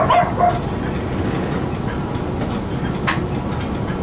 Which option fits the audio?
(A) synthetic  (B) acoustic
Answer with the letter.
B